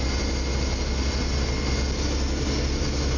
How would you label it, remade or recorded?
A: recorded